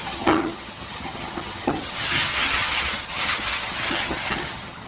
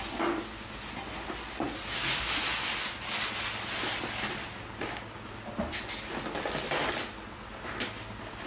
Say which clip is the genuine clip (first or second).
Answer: second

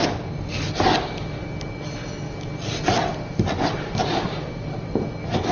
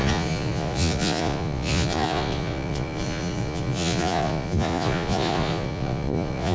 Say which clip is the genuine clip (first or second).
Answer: first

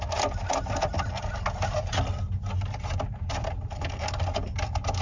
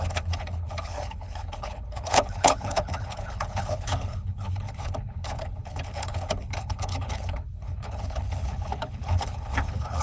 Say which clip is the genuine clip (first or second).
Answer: first